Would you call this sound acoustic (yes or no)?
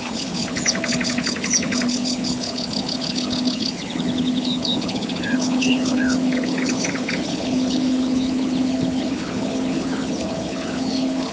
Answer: no